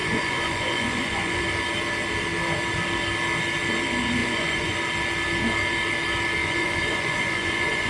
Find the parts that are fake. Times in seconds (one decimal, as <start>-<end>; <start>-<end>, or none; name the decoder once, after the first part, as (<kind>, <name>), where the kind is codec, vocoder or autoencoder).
0.0-1.4 (vocoder, Vocos); 4.2-4.8; 6.4-7.9